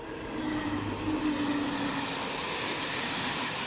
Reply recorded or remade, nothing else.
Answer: recorded